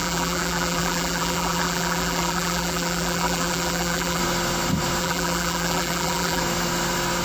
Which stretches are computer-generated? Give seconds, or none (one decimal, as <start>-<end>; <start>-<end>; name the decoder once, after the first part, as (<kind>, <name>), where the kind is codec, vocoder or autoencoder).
0.0-4.2 (vocoder, BigVGAN v2); 5.0-6.4